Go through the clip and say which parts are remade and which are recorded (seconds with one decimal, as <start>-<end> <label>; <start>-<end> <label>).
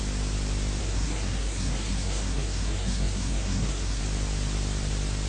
0.0-0.8 recorded; 0.8-4.0 remade; 4.0-5.3 recorded